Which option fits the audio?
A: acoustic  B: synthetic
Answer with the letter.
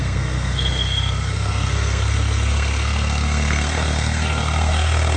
B